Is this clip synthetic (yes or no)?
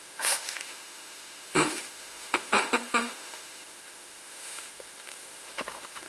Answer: yes